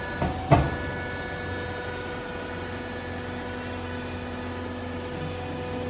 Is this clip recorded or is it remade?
recorded